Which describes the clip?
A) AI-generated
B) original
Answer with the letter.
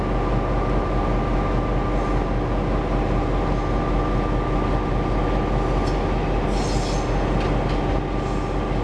B